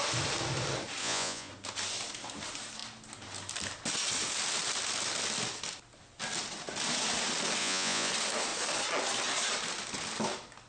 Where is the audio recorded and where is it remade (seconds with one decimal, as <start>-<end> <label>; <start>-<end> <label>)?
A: 0.0-1.0 recorded; 1.0-1.5 remade; 1.5-7.6 recorded; 7.6-8.1 remade; 8.1-10.7 recorded